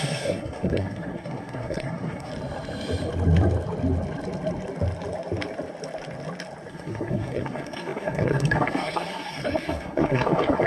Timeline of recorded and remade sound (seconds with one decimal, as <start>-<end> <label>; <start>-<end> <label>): 0.0-2.3 remade; 2.3-6.7 recorded; 6.7-10.7 remade